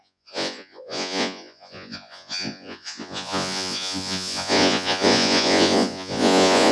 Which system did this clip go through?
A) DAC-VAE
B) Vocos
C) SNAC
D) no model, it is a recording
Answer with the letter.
B